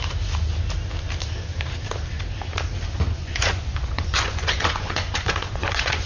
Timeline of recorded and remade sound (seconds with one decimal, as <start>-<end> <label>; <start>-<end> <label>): 0.0-3.2 recorded; 3.2-6.1 remade